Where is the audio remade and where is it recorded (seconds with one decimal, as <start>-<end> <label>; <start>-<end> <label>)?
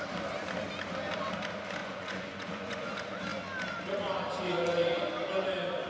0.0-1.8 recorded; 1.8-2.9 remade; 2.9-5.9 recorded